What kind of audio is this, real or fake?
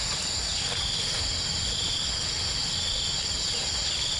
real